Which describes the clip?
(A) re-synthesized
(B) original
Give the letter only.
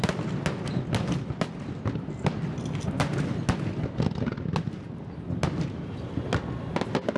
B